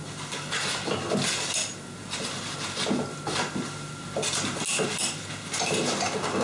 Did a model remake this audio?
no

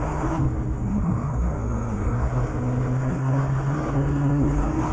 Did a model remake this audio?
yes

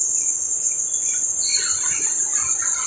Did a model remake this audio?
no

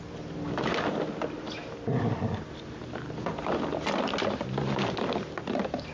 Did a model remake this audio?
no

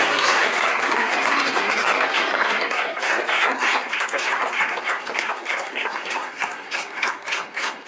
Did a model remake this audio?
yes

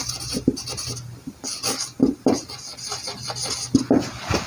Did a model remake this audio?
no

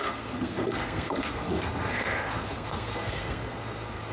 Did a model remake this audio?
yes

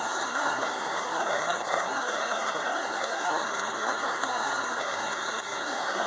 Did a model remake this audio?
yes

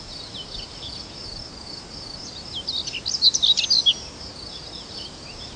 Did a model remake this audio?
no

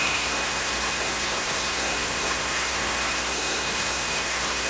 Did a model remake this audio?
yes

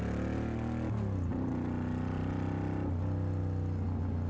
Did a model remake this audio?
no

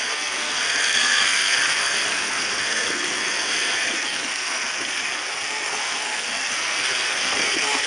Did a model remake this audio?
yes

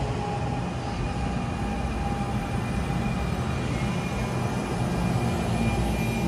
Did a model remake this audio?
no